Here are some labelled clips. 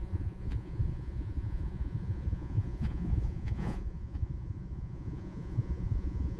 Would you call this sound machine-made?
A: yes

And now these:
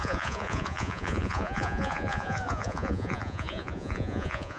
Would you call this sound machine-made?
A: yes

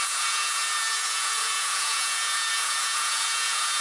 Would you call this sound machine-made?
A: yes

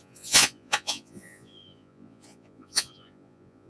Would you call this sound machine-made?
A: yes